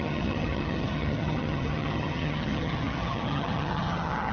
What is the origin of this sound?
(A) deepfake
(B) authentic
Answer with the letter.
A